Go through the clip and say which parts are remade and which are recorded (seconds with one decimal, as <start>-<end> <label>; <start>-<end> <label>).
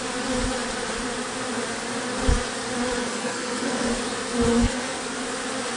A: 0.0-3.0 recorded; 3.0-4.0 remade; 4.0-4.5 recorded; 4.5-5.0 remade; 5.0-5.8 recorded